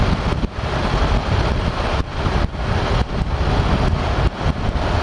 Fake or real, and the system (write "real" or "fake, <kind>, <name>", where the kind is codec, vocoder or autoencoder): real